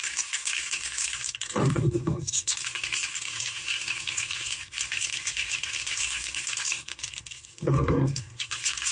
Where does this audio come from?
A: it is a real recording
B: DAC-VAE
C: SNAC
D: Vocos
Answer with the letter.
C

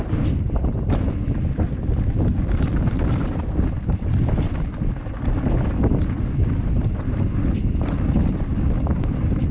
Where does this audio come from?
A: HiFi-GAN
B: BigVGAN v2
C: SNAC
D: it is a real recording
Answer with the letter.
D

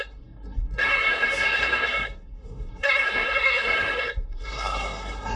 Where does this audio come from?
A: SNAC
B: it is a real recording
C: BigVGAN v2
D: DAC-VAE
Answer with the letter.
A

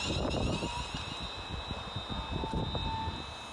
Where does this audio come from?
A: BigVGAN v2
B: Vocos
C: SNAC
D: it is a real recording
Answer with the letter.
D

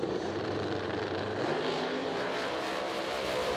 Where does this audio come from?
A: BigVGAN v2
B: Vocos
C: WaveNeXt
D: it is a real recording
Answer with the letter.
A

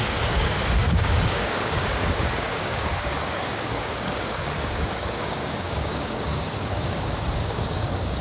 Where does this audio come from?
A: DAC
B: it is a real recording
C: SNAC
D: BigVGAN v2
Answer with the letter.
A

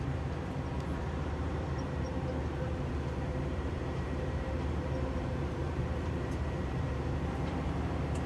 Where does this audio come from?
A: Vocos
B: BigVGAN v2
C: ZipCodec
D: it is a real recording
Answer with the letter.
B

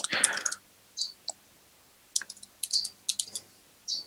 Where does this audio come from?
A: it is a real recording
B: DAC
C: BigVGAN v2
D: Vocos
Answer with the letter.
A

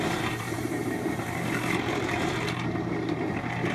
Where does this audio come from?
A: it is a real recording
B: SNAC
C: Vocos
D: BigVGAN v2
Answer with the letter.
D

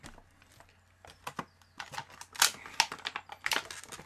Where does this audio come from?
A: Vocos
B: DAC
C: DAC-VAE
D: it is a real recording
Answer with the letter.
D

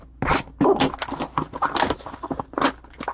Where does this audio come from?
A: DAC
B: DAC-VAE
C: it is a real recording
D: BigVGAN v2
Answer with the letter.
C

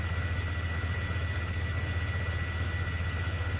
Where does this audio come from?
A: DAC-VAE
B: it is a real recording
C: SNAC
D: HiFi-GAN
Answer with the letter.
B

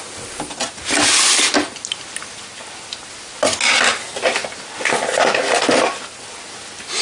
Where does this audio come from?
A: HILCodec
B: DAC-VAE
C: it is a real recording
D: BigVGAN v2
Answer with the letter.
C